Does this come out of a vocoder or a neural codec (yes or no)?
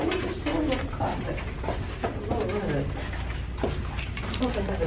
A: no